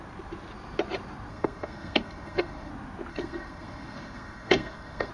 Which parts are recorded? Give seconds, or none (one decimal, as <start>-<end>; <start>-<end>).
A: 0.0-1.3; 2.7-3.1